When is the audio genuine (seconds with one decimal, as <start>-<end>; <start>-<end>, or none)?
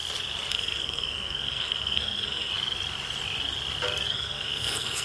0.0-0.5; 2.5-4.1